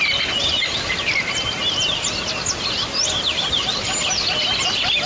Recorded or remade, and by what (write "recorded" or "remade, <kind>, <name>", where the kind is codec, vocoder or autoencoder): recorded